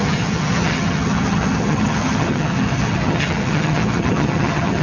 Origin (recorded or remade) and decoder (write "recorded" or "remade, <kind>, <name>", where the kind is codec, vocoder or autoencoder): remade, vocoder, HiFi-GAN